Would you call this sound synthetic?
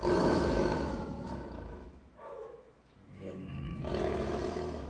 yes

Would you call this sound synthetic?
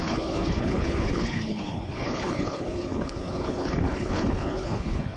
yes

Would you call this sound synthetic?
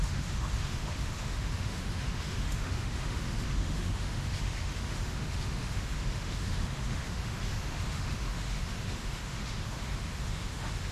yes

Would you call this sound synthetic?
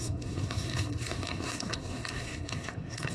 yes